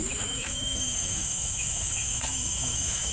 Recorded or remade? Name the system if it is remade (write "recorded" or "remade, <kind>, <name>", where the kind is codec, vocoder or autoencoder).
remade, autoencoder, DAC-VAE